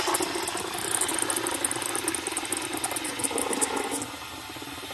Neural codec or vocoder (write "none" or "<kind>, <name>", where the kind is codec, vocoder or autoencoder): none